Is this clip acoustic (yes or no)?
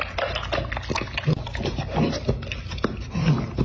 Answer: yes